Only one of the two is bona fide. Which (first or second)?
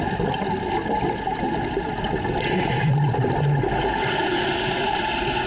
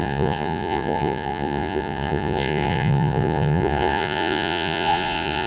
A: first